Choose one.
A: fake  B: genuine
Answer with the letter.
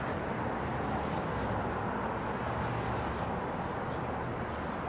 B